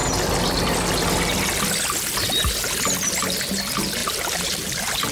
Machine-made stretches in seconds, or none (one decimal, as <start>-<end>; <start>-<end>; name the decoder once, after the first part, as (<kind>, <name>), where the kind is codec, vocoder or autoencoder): 4.0-5.1 (vocoder, BigVGAN v2)